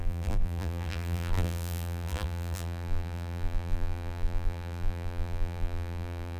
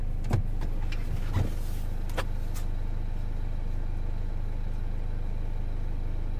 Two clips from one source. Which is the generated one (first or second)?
first